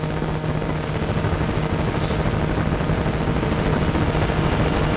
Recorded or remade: recorded